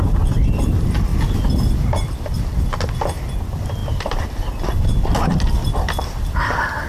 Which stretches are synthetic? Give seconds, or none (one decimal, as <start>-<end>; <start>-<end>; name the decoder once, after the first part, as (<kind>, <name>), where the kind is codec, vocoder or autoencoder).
3.8-4.3 (vocoder, BigVGAN v2)